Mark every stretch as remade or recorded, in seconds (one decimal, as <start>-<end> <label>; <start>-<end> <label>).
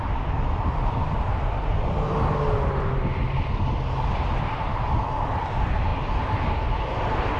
0.0-7.4 remade